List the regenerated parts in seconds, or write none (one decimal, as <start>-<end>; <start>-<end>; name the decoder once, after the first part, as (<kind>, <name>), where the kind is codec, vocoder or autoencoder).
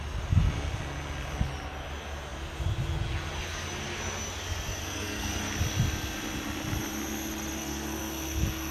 4.8-5.5 (codec, SNAC); 7.6-8.7